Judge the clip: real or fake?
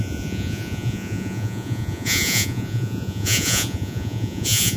fake